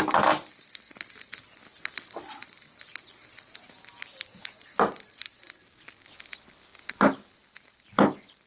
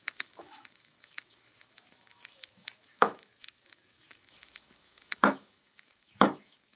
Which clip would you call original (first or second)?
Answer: first